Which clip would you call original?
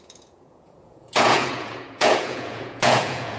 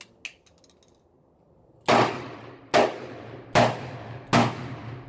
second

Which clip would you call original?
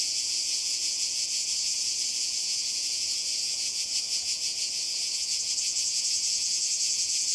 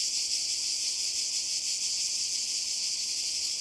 second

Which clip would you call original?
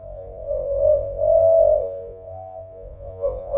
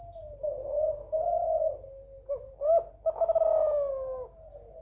second